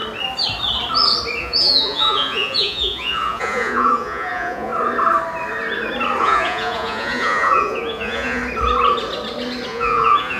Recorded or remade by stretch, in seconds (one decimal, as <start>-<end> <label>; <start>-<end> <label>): 0.0-1.4 recorded; 1.4-4.7 remade; 4.7-6.2 recorded; 6.2-8.4 remade; 8.4-9.7 recorded; 9.7-10.4 remade